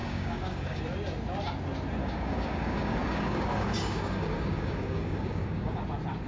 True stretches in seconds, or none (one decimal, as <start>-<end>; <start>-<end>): 0.8-2.0; 5.8-6.3